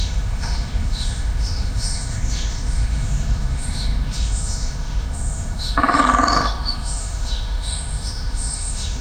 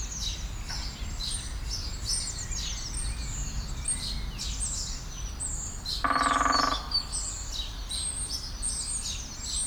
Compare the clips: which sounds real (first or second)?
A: second